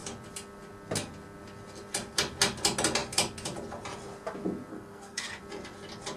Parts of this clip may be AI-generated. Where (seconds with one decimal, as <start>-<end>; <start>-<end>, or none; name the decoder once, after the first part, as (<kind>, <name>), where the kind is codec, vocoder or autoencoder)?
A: 4.7-5.4 (codec, SNAC)